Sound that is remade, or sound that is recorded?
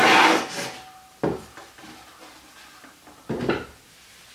recorded